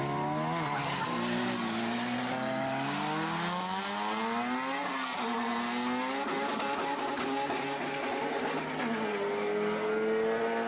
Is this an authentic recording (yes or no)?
yes